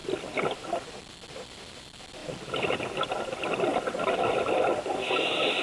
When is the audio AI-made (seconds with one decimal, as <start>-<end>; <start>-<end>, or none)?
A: none